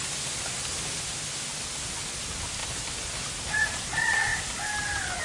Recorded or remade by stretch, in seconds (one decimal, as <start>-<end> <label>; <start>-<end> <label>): 0.0-5.2 recorded